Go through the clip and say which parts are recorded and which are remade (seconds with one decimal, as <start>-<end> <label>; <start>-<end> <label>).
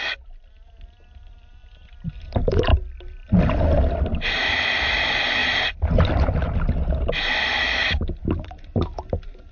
0.0-2.7 remade; 2.7-3.4 recorded; 3.4-5.4 remade; 5.4-8.2 recorded; 8.2-9.5 remade